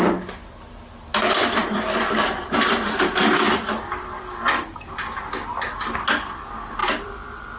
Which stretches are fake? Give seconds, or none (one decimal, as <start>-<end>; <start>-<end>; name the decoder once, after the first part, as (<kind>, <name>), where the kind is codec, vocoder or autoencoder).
1.1-4.2 (vocoder, BigVGAN v2); 6.8-7.6